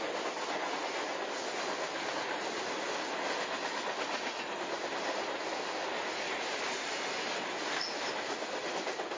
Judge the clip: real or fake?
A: real